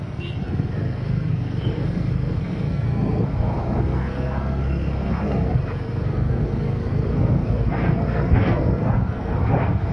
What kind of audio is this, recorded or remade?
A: remade